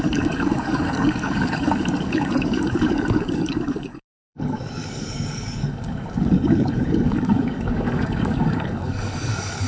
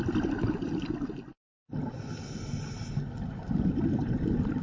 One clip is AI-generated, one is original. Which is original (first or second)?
second